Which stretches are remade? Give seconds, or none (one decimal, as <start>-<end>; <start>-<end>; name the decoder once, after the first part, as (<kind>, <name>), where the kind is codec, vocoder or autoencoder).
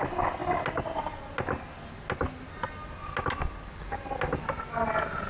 none